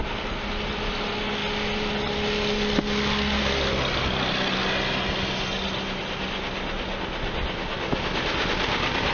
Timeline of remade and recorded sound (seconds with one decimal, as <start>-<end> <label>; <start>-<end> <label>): 0.0-9.1 recorded